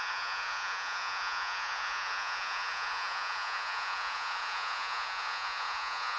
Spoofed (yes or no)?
yes